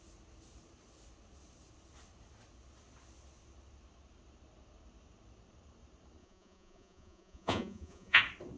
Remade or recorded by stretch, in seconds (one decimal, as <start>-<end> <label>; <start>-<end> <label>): 0.0-6.2 recorded; 6.2-8.2 remade; 8.2-8.6 recorded